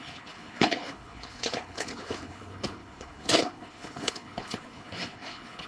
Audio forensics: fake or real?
fake